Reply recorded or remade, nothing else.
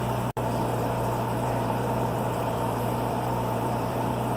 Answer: remade